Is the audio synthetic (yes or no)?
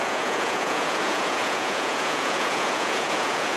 yes